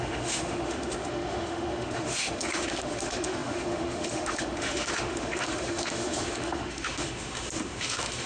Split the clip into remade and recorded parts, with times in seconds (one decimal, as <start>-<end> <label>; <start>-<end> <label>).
0.0-8.3 remade